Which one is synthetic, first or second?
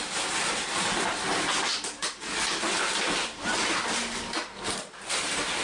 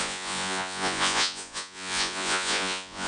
second